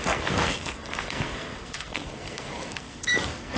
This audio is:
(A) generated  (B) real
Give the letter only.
A